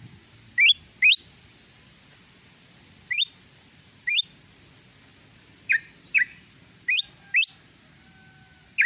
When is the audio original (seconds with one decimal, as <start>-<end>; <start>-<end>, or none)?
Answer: 0.0-8.9